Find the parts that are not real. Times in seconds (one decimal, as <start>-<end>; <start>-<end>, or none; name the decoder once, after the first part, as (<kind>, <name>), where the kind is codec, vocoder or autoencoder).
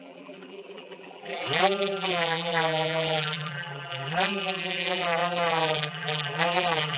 0.0-7.0 (vocoder, BigVGAN v2)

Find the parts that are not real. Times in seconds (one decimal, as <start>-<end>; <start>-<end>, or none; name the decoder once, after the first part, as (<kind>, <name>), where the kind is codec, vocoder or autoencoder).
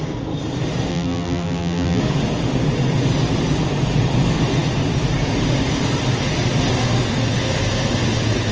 0.9-2.0 (vocoder, BigVGAN v2)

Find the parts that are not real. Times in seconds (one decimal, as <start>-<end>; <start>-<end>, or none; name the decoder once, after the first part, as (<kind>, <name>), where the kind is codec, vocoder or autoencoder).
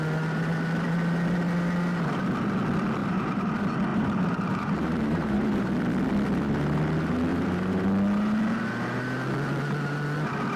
3.0-3.5 (vocoder, BigVGAN v2); 3.9-5.7; 7.3-7.9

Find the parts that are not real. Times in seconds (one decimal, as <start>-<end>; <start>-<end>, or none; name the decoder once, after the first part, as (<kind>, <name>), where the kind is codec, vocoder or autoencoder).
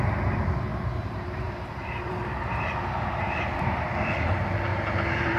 0.7-3.9 (vocoder, BigVGAN v2); 4.7-5.4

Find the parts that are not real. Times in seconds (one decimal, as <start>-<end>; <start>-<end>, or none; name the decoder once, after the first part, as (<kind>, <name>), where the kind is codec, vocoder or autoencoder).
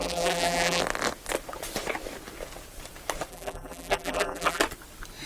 0.0-0.8 (vocoder, BigVGAN v2); 3.3-4.6